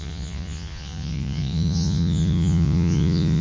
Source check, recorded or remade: remade